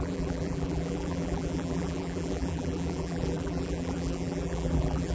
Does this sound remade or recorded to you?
remade